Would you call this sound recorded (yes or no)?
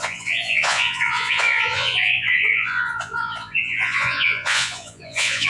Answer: no